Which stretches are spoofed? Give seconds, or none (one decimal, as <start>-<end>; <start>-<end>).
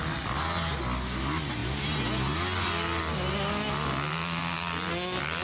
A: none